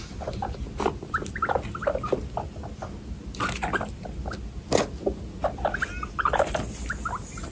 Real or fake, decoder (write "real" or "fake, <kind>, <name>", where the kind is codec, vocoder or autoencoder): real